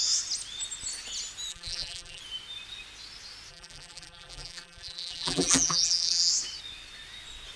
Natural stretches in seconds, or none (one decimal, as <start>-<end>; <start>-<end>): 0.0-1.5; 2.2-3.5; 6.3-7.6